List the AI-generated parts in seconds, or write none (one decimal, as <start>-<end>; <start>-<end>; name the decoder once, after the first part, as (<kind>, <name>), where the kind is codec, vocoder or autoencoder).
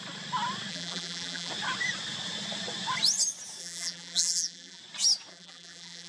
0.7-1.5 (vocoder, BigVGAN v2); 3.6-4.8; 5.3-6.1